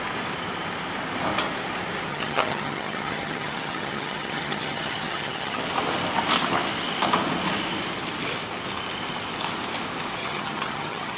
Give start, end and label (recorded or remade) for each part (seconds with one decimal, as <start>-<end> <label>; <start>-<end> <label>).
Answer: 0.0-2.1 recorded; 2.1-5.6 remade; 5.6-10.2 recorded; 10.2-11.2 remade